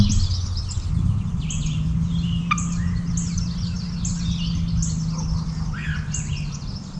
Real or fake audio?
real